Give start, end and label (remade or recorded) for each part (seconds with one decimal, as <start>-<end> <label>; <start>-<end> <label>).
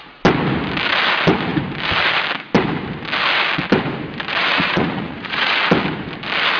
0.0-4.4 recorded; 4.4-5.5 remade; 5.5-6.6 recorded